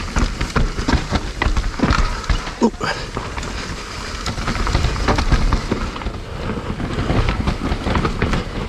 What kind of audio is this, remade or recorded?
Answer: recorded